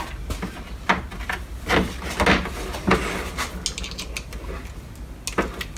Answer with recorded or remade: recorded